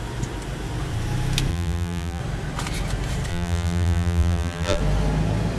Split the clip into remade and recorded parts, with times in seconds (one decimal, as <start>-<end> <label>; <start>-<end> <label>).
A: 0.0-1.5 recorded; 1.5-2.2 remade; 2.2-3.3 recorded; 3.3-4.8 remade; 4.8-5.6 recorded